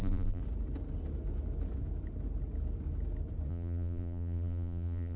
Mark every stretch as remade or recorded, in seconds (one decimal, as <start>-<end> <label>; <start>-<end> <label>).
0.0-0.4 remade; 0.4-3.5 recorded; 3.5-5.2 remade

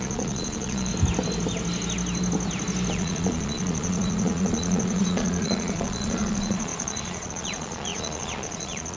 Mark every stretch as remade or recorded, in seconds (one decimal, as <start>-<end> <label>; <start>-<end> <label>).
0.0-0.9 remade; 0.9-2.9 recorded; 2.9-9.0 remade

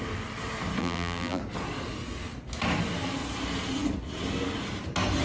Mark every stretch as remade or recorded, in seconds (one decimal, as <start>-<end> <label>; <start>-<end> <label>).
0.0-0.8 recorded; 0.8-1.4 remade; 1.4-5.2 recorded

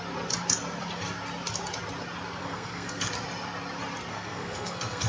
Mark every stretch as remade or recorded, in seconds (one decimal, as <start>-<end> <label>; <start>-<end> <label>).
0.0-2.4 recorded; 2.4-3.1 remade; 3.1-4.1 recorded; 4.1-5.1 remade

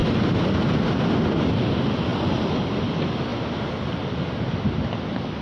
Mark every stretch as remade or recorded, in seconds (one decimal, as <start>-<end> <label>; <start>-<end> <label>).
0.0-2.1 recorded; 2.1-2.6 remade; 2.6-5.4 recorded